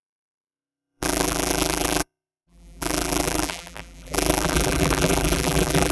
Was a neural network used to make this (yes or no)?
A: yes